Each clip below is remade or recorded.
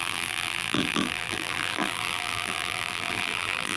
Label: remade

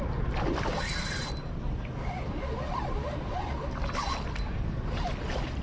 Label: recorded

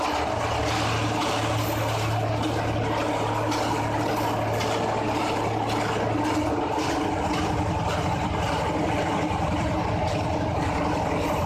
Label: recorded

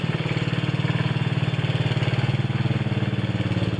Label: recorded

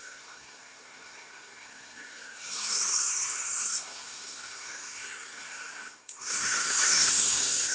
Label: remade